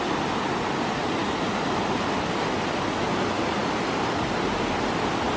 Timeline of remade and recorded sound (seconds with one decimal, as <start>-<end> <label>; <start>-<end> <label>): 0.0-5.4 recorded